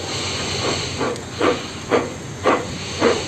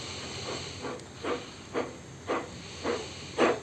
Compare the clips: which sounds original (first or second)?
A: second